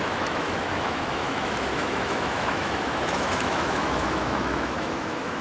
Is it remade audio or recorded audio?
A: remade